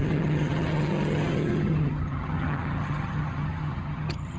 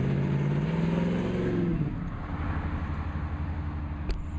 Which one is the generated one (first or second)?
first